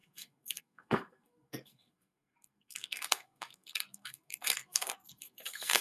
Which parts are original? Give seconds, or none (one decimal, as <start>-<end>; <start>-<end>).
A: none